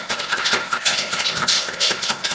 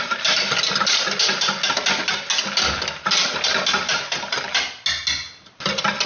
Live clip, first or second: second